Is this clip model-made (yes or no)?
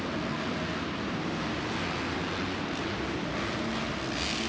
no